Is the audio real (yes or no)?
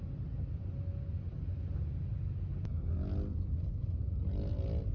yes